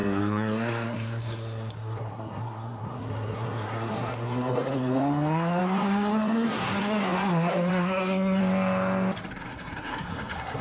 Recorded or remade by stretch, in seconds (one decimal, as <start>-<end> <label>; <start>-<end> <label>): 0.0-8.4 remade; 8.4-9.3 recorded; 9.3-10.6 remade